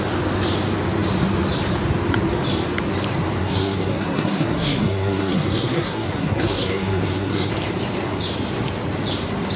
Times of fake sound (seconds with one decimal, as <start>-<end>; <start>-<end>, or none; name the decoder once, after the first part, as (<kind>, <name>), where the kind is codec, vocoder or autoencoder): 3.4-7.5 (codec, SNAC)